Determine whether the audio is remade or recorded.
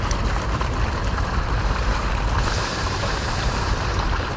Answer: remade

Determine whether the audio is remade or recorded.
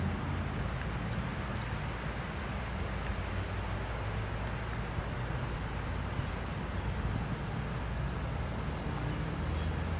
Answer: recorded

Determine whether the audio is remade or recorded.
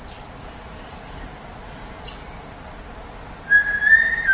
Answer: recorded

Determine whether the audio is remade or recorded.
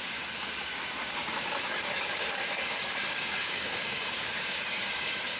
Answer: remade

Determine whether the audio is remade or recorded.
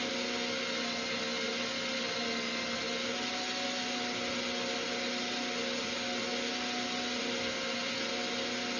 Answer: recorded